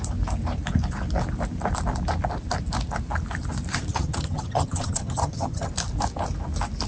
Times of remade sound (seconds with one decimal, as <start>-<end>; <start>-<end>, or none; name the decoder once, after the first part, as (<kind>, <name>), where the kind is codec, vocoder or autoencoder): 3.9-5.7 (vocoder, HiFi-GAN)